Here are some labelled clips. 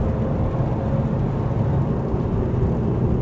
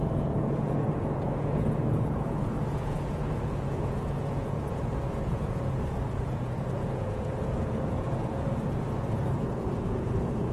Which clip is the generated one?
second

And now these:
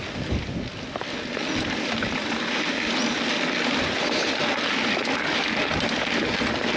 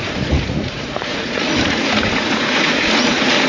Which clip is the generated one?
second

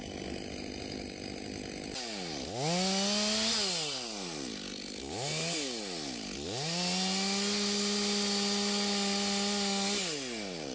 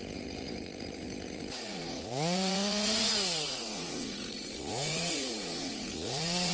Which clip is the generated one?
second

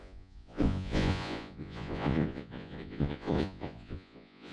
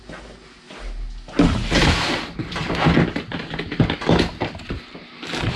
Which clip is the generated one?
first